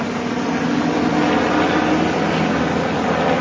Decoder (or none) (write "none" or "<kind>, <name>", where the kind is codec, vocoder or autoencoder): none